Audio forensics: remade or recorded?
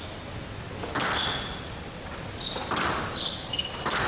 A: recorded